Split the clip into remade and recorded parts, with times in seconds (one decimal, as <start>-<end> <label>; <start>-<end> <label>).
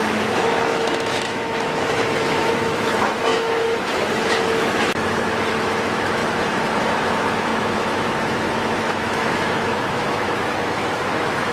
0.0-6.2 remade; 6.2-6.8 recorded; 6.8-11.5 remade